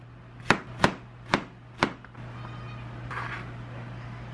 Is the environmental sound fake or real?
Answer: real